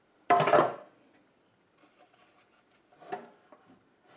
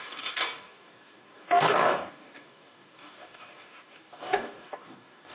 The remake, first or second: second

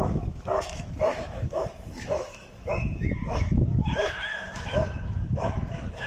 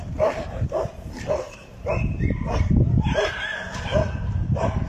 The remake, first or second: first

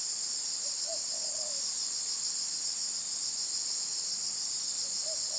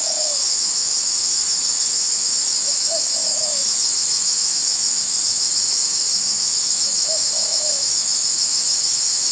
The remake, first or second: second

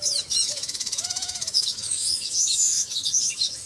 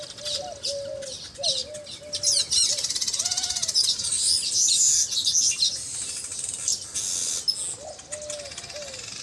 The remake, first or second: first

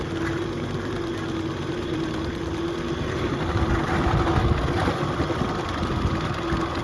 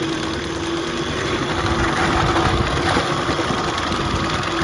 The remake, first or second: first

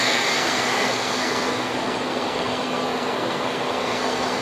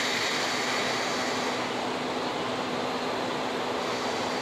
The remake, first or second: first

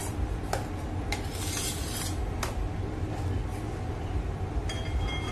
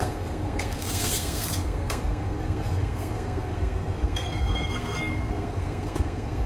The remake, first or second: second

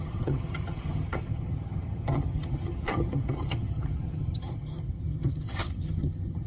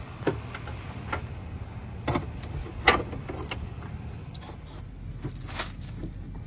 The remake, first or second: first